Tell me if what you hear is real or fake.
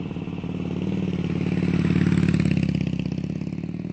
real